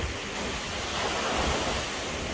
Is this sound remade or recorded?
recorded